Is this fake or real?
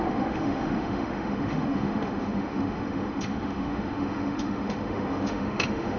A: fake